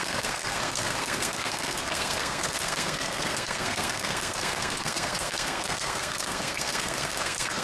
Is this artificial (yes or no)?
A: yes